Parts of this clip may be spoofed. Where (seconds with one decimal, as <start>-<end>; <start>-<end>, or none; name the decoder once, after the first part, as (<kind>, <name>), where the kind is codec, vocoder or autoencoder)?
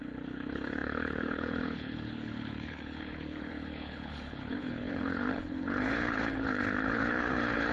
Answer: 0.0-7.7 (codec, HILCodec)